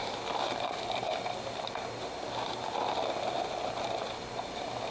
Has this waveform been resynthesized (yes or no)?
no